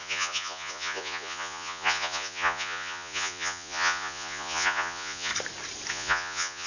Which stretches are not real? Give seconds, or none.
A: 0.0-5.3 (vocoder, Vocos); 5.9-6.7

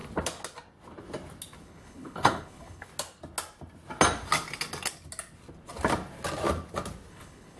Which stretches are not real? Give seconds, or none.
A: 1.6-2.9 (codec, HILCodec); 7.1-7.6

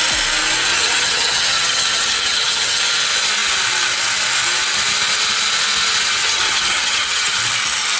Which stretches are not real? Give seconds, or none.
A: 0.7-2.8 (vocoder, HiFi-GAN); 6.2-7.4

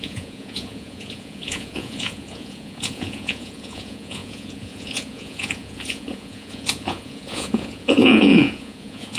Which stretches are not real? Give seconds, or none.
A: 0.0-9.2 (vocoder, Vocos)

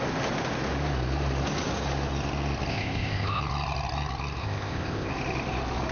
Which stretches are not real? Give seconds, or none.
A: 2.7-3.4 (codec, ZipCodec); 4.4-5.1

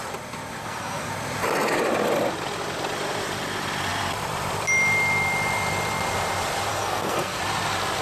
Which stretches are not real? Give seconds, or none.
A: 0.6-1.1 (codec, SNAC); 6.7-7.4

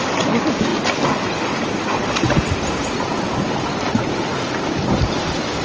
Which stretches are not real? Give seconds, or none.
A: 0.7-4.1 (vocoder, BigVGAN v2)